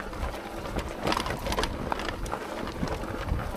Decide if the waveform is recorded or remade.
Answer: recorded